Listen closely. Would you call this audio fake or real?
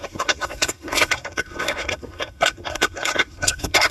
fake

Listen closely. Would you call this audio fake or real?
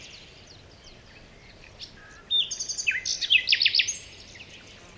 real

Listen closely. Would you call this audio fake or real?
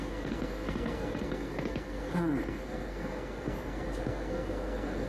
fake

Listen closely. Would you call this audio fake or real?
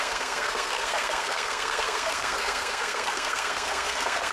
fake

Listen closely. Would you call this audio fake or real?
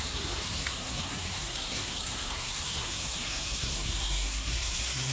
fake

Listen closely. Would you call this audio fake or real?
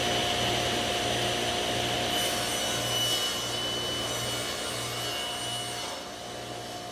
real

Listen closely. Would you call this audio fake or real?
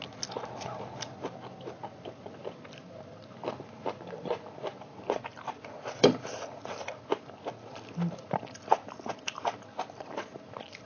real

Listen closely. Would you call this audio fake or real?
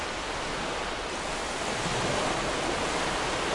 real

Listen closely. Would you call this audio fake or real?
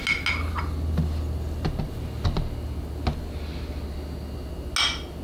real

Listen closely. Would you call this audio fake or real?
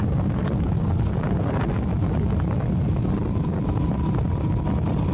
real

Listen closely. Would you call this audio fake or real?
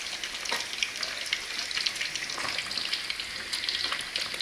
real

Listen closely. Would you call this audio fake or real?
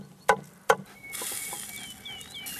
real